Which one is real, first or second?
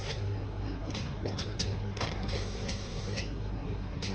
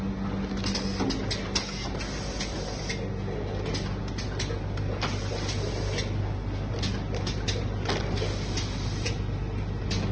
second